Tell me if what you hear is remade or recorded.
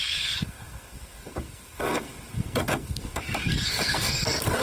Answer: remade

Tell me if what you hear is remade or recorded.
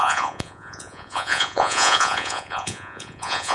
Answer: remade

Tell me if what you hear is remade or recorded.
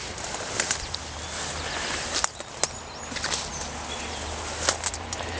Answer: recorded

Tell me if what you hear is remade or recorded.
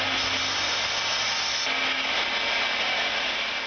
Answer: recorded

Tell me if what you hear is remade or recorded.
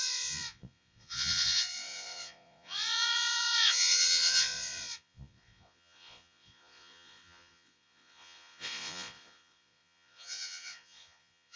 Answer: remade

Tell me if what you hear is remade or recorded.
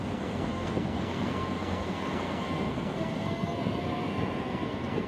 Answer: remade